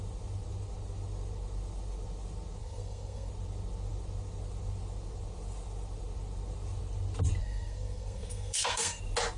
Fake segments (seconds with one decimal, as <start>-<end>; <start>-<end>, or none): 2.6-3.3; 7.4-9.0